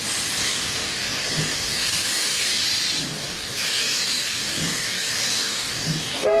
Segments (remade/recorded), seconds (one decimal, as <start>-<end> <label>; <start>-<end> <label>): 0.0-0.4 recorded; 0.4-2.6 remade; 2.6-3.1 recorded; 3.1-6.4 remade